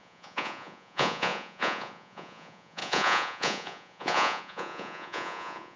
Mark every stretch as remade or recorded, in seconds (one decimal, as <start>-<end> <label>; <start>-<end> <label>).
0.0-5.8 remade